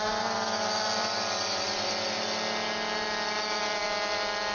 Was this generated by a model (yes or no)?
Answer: no